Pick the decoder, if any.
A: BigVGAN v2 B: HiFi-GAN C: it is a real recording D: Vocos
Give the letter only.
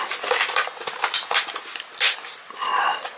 C